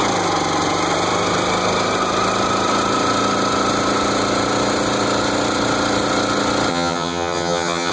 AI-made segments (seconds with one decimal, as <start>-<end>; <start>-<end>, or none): 6.7-7.9